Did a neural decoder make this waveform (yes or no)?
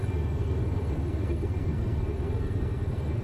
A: yes